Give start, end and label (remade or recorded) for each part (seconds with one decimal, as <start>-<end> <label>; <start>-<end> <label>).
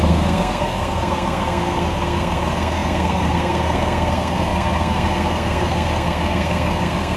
0.0-7.2 remade